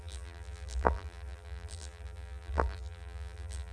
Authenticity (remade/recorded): remade